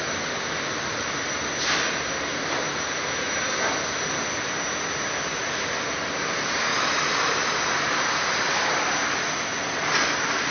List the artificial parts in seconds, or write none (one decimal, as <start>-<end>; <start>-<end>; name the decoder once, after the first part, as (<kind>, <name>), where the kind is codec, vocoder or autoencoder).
none